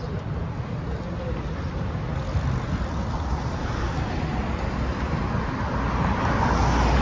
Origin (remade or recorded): recorded